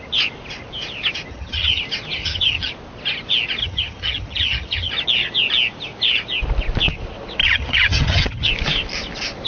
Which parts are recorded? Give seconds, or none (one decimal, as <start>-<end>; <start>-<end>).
0.0-1.3; 1.8-2.2; 2.7-3.6; 4.9-7.4; 8.5-9.5